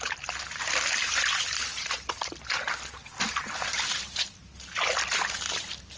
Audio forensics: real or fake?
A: real